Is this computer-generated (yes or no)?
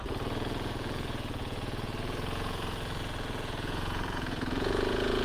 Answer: yes